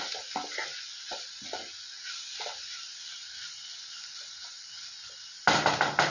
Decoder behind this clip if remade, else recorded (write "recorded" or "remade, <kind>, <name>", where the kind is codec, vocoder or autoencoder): recorded